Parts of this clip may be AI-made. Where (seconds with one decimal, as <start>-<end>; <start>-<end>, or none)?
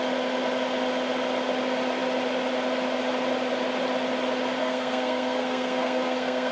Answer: 4.6-6.5